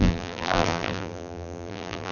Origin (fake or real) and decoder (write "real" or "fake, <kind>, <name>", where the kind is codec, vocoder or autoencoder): fake, vocoder, BigVGAN v2